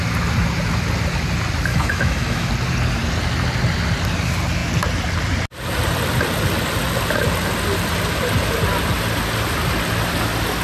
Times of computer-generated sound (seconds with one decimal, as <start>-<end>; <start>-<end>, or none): 1.7-2.5